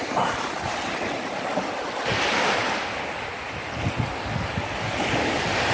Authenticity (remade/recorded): recorded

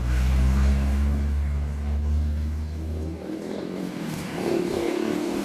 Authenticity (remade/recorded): remade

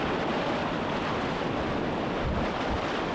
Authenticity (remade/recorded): recorded